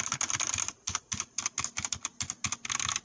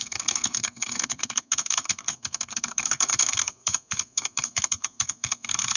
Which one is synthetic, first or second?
second